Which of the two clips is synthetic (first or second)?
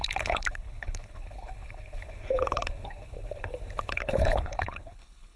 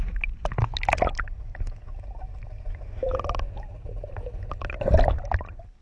first